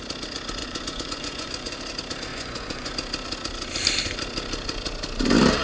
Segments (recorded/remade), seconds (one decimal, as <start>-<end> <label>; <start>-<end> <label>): 0.0-0.6 recorded; 0.6-1.8 remade; 1.8-2.3 recorded; 2.3-2.9 remade; 2.9-5.6 recorded